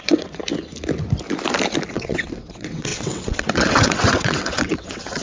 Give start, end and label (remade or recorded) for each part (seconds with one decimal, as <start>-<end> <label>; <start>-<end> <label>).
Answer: 0.0-0.4 remade; 0.4-1.9 recorded; 1.9-5.2 remade

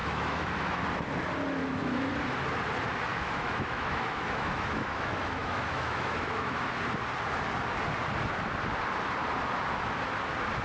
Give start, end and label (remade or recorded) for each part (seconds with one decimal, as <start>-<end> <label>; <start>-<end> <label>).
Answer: 0.0-0.8 remade; 0.8-1.6 recorded; 1.6-2.1 remade; 2.1-3.1 recorded; 3.1-6.7 remade; 6.7-10.6 recorded

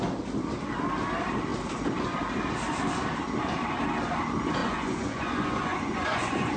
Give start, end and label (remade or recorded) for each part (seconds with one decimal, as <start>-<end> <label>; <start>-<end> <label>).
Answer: 0.0-4.6 recorded; 4.6-6.6 remade

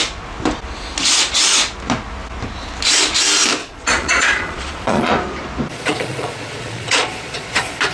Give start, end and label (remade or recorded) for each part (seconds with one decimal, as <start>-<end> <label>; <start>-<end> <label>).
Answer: 0.0-3.6 recorded; 3.6-5.1 remade; 5.1-5.7 recorded; 5.7-7.9 remade

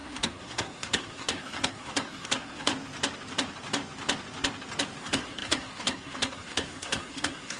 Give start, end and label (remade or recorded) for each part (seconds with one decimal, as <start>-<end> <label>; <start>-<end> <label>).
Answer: 0.0-2.7 remade; 2.7-5.0 recorded; 5.0-7.6 remade

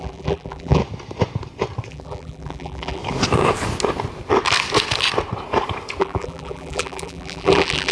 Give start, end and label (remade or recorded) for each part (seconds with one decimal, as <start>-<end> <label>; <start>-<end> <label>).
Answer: 0.0-0.8 remade; 0.8-1.9 recorded; 1.9-3.0 remade; 3.0-6.0 recorded; 6.0-7.9 remade

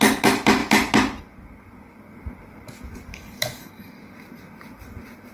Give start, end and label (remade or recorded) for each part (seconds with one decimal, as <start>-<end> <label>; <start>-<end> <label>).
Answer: 0.0-3.1 recorded; 3.1-4.0 remade; 4.0-5.3 recorded

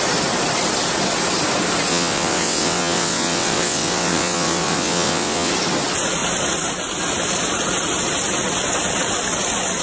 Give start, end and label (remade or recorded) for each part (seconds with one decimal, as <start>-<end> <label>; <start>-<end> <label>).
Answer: 0.0-1.9 recorded; 1.9-5.5 remade; 5.5-9.8 recorded